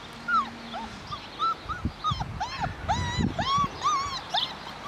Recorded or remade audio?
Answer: recorded